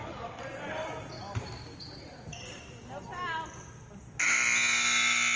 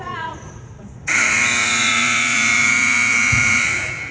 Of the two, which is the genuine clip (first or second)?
first